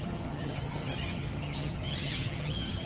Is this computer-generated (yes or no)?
yes